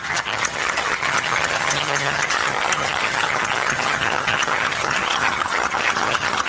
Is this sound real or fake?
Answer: fake